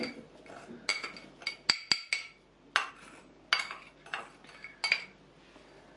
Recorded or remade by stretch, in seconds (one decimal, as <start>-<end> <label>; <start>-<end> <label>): 0.0-6.0 recorded